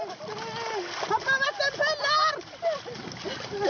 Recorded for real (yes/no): yes